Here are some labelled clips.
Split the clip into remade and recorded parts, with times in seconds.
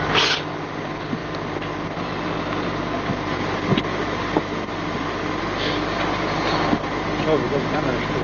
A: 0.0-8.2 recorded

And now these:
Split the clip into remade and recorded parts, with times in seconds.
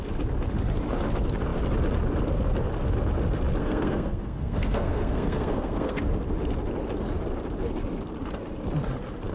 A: 0.0-3.6 recorded; 3.6-6.0 remade; 6.0-9.3 recorded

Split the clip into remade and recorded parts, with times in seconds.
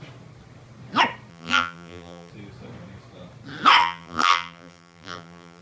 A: 0.0-1.3 recorded; 1.3-2.3 remade; 2.3-3.8 recorded; 3.8-5.6 remade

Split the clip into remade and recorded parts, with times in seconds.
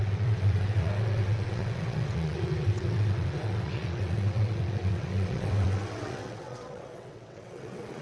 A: 0.0-8.0 remade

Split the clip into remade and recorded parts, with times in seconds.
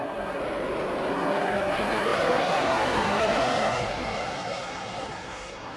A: 0.0-0.4 remade; 0.4-1.1 recorded; 1.1-5.8 remade